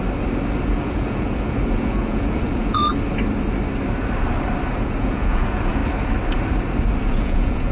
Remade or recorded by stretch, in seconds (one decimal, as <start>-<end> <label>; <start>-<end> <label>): 0.0-0.6 recorded; 0.6-2.9 remade; 2.9-4.7 recorded; 4.7-5.8 remade; 5.8-7.0 recorded; 7.0-7.7 remade